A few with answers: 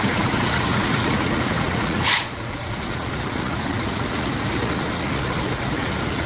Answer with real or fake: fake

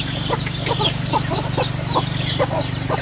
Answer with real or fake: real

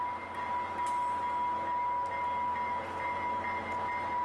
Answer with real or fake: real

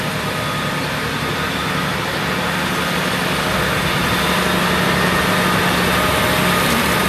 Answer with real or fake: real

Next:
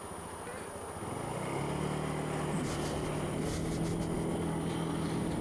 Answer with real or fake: real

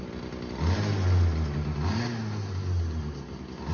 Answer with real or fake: real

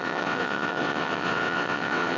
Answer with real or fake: fake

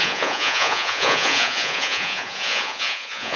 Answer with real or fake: fake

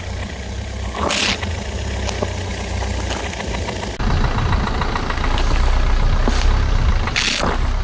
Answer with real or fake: real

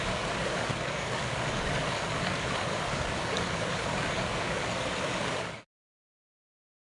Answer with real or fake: fake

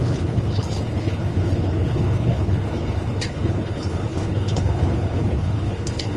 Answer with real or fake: fake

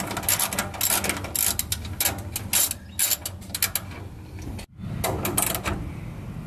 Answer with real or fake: real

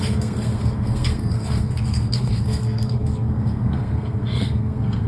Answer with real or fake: fake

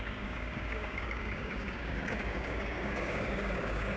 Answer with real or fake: fake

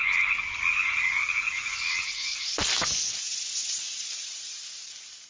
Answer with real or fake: real